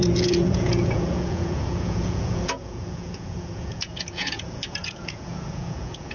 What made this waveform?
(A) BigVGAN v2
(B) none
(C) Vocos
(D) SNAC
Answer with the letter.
C